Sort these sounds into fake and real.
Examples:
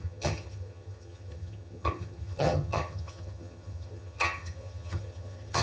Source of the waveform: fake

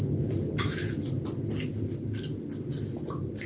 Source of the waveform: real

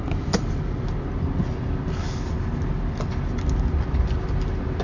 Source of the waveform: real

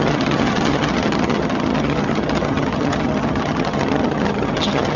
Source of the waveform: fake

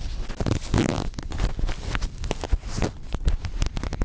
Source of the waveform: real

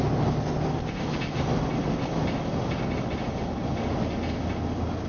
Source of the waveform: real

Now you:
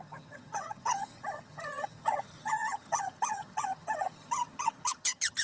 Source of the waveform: fake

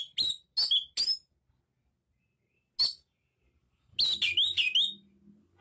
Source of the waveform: real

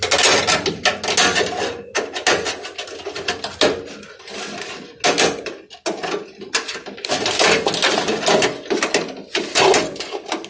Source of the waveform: real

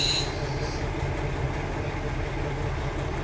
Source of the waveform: real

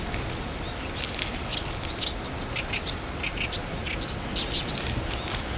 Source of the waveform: real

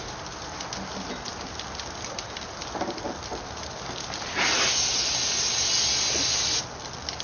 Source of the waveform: real